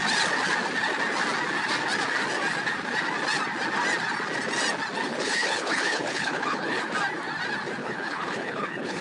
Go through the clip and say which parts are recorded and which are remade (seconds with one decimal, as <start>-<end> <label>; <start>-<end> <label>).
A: 0.0-5.1 recorded; 5.1-6.8 remade; 6.8-7.8 recorded; 7.8-9.0 remade